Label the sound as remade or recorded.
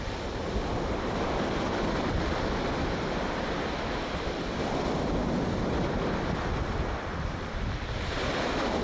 recorded